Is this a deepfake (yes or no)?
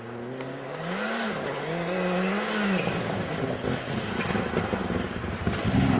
no